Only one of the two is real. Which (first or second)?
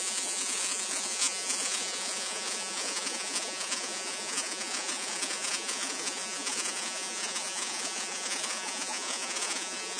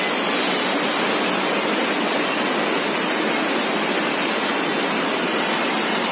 second